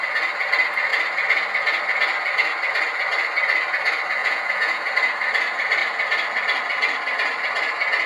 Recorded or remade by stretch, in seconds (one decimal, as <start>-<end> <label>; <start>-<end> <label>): 0.0-4.2 recorded; 4.2-4.9 remade; 4.9-8.1 recorded